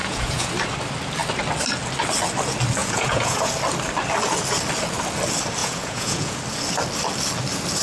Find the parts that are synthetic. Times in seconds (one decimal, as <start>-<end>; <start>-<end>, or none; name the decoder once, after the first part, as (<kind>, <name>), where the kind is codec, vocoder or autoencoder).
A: 0.0-0.5 (vocoder, Vocos); 2.8-3.5; 5.6-6.4